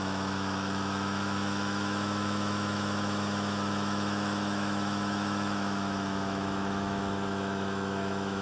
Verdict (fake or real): fake